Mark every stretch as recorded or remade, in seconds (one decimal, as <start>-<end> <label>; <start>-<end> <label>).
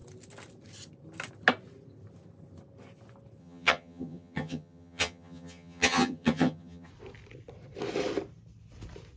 0.0-3.4 recorded; 3.4-6.9 remade; 6.9-9.2 recorded